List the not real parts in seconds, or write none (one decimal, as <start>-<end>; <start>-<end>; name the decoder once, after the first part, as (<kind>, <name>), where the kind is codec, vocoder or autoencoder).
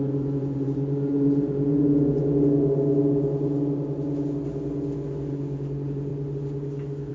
0.0-1.7 (vocoder, Vocos); 5.3-6.1